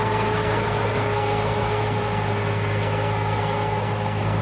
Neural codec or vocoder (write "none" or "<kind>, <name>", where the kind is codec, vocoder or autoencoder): codec, SNAC